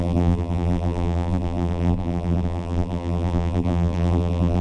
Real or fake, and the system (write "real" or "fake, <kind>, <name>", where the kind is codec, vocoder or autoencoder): fake, vocoder, BigVGAN v2